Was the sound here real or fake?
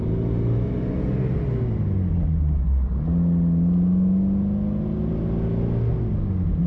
real